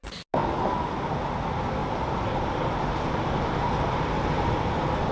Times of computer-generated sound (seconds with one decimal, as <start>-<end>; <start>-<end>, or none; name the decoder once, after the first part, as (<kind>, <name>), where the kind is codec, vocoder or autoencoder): 1.8-4.0 (vocoder, BigVGAN v2)